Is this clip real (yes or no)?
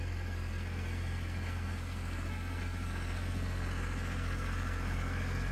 no